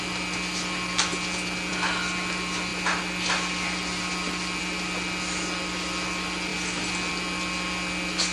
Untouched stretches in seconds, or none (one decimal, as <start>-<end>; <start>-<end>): 0.0-8.3